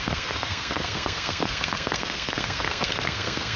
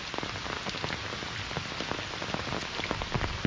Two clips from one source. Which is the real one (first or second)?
second